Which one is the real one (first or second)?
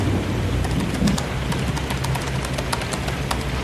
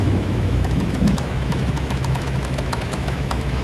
first